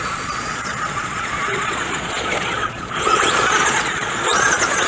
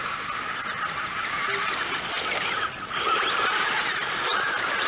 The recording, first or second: second